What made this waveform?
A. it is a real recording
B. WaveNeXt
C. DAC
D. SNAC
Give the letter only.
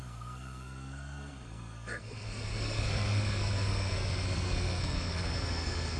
D